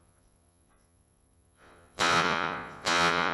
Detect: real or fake fake